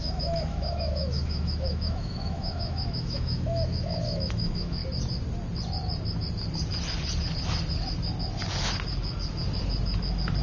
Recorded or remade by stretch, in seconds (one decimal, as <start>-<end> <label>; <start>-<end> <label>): 0.0-4.8 remade; 4.8-10.4 recorded